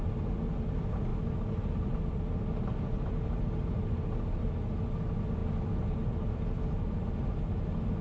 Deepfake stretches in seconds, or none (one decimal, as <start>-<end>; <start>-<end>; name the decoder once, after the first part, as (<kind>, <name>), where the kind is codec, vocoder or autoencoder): none